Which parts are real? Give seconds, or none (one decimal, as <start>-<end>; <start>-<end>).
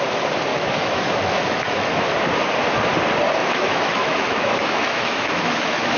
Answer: 0.0-0.5; 1.9-3.4